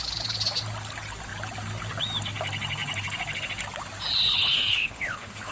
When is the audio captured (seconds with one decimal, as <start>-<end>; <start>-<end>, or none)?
0.0-4.3

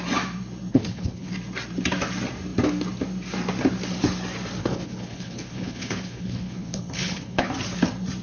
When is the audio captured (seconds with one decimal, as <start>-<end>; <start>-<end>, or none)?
0.0-0.7; 1.3-4.6; 7.5-8.2

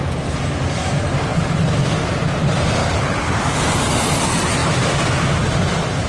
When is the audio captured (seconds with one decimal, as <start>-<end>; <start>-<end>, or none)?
0.0-2.8; 3.4-6.1

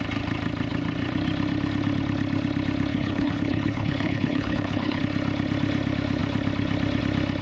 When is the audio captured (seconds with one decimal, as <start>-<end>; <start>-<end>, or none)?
0.0-2.9; 5.0-7.4

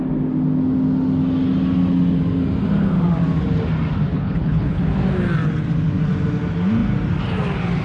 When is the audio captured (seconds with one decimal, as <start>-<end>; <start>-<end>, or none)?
0.0-4.1; 4.8-7.8